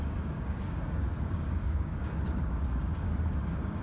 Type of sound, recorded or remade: remade